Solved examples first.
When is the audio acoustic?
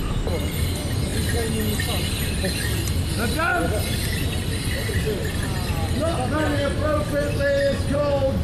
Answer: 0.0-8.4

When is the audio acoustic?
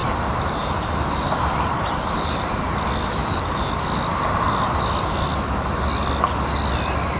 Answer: 2.8-3.2; 3.7-7.2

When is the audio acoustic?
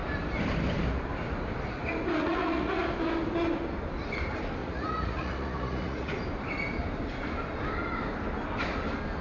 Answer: 0.0-2.2; 2.8-4.6; 6.1-9.2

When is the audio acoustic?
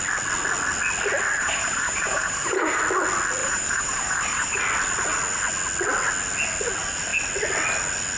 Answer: 0.0-1.4; 2.8-3.4; 4.6-8.2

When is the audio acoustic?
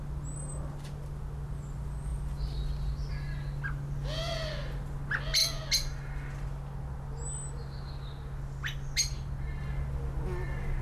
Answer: 0.0-10.8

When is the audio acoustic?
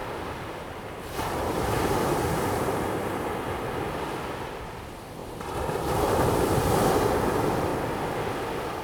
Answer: 2.8-5.2; 6.9-8.8